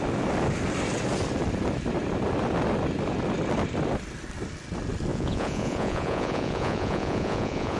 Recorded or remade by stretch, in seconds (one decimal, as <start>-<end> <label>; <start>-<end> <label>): 0.0-5.1 recorded; 5.1-7.8 remade